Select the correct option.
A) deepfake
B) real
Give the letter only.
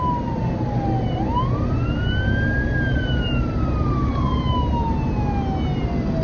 B